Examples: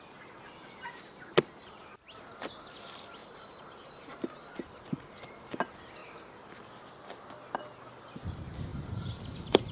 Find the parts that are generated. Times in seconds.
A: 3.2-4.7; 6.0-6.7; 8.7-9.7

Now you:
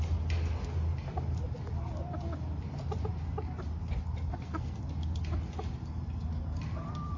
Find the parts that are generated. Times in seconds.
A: 4.3-4.8

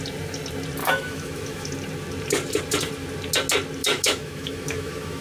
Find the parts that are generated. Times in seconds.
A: 0.8-1.7; 3.8-5.2

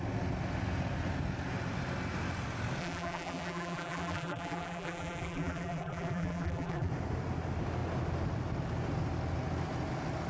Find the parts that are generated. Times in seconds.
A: 2.8-6.9